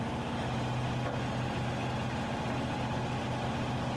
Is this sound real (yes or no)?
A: yes